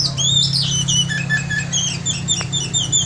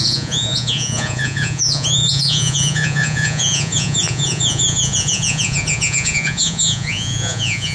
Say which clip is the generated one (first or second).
second